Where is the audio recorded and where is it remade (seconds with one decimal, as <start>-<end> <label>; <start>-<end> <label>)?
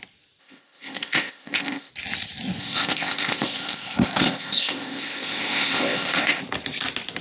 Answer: 0.0-0.4 recorded; 0.4-1.9 remade; 1.9-2.6 recorded; 2.6-6.4 remade; 6.4-7.2 recorded